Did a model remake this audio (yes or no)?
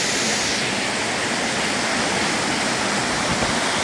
no